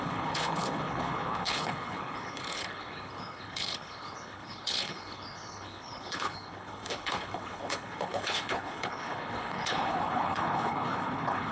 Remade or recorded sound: remade